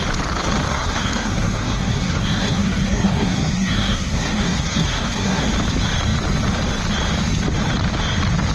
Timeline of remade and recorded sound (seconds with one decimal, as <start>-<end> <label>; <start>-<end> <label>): 0.0-0.7 recorded; 0.7-5.4 remade; 5.4-8.5 recorded